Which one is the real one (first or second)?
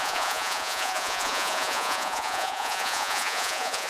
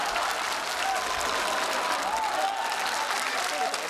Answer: second